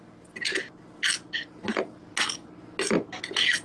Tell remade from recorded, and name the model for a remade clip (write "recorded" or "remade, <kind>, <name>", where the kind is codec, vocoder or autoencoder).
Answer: recorded